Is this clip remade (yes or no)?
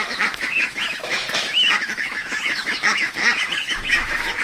yes